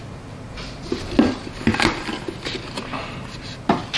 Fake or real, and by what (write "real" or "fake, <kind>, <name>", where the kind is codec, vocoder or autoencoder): real